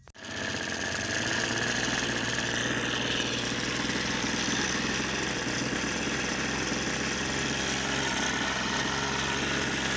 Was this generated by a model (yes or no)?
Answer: no